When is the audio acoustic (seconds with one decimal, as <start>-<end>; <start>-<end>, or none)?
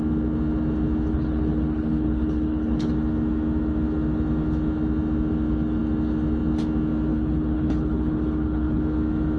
0.0-1.1; 2.9-7.1; 8.8-9.4